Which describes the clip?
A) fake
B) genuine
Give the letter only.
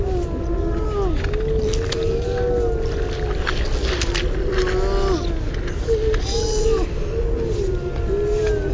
B